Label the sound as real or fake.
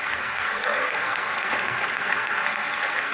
fake